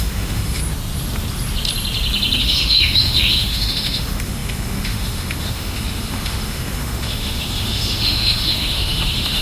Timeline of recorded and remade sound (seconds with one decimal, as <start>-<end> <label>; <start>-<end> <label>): 0.0-0.6 remade; 0.6-2.4 recorded; 2.4-9.4 remade